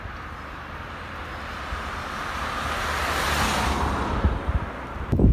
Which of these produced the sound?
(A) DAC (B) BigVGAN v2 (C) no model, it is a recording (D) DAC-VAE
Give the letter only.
C